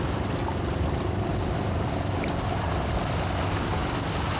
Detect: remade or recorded remade